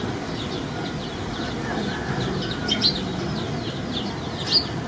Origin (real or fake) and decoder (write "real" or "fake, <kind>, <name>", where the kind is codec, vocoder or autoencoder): real